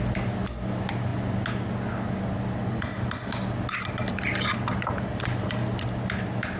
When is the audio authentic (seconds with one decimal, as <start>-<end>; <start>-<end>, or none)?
0.0-6.6